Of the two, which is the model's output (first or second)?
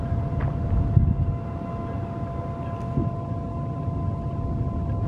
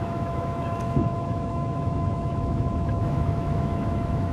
second